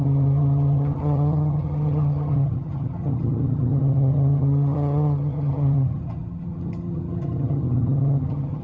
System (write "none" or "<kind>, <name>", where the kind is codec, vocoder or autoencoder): vocoder, HiFi-GAN